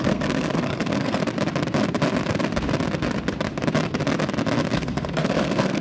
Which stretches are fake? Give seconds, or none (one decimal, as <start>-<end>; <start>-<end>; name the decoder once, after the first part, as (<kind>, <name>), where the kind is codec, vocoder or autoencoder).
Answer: 0.0-1.2 (codec, SNAC); 4.7-5.8